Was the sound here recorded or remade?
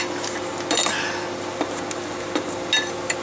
recorded